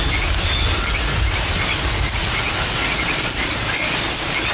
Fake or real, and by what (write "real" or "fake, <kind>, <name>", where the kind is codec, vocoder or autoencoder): real